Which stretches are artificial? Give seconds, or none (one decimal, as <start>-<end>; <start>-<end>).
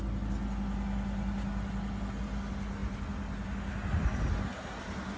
none